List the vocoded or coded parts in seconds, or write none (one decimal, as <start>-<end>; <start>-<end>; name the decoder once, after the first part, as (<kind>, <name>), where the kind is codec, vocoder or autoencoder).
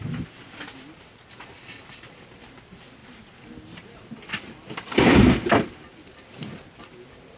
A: none